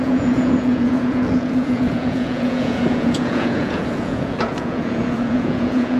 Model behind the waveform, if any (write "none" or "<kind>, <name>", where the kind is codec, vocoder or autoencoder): vocoder, Vocos